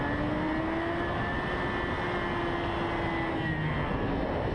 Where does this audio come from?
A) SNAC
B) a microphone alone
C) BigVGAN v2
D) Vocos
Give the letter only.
B